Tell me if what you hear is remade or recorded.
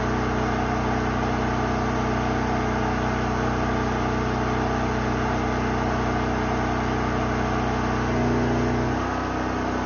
recorded